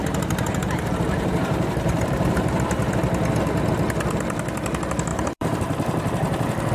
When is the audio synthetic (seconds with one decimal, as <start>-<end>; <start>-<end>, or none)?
0.0-3.0; 5.1-6.7